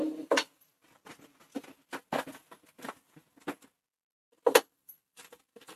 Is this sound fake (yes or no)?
no